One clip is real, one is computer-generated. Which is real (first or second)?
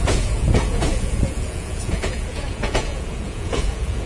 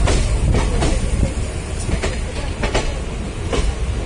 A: second